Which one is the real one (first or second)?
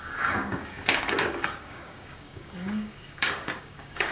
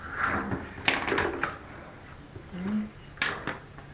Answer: second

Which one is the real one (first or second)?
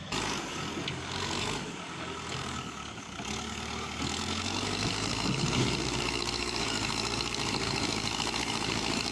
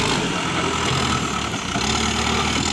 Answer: second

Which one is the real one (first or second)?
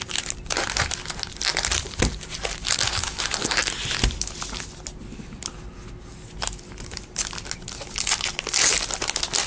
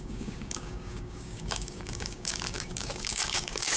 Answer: first